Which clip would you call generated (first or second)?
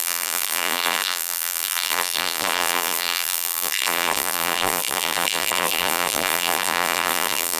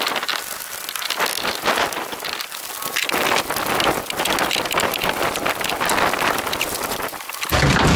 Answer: first